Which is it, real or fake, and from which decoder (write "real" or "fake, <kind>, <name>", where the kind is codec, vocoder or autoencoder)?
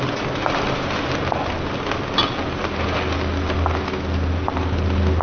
real